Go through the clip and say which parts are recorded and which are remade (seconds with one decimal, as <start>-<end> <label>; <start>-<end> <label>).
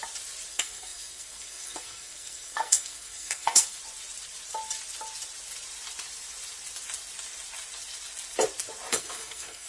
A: 0.0-0.5 recorded; 0.5-3.8 remade; 3.8-8.9 recorded; 8.9-9.7 remade